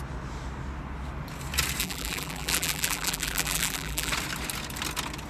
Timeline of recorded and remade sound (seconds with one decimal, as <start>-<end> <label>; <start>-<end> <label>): 0.0-1.8 recorded; 1.8-4.1 remade; 4.1-5.3 recorded